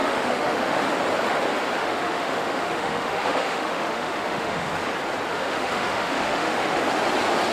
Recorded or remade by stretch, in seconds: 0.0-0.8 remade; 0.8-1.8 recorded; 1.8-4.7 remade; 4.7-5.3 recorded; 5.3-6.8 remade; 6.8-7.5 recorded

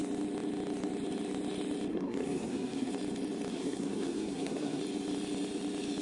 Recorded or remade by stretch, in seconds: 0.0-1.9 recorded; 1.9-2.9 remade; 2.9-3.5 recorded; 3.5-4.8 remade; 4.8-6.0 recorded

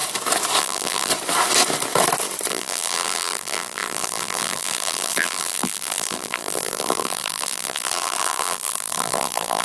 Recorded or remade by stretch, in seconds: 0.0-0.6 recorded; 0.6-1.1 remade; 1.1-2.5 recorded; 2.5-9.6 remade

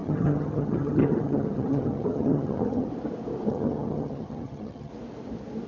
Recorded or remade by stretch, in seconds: 0.0-2.9 remade; 2.9-3.5 recorded; 3.5-4.9 remade; 4.9-5.7 recorded

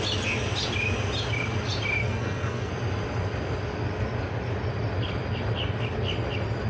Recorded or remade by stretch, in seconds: 0.0-2.0 recorded; 2.0-2.7 remade; 2.7-6.7 recorded